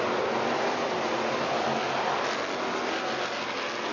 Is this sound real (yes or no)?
yes